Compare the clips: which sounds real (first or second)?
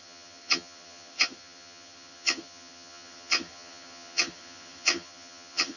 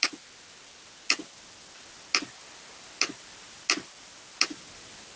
second